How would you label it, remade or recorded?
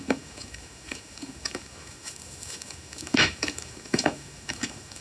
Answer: remade